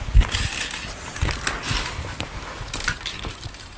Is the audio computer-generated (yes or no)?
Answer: no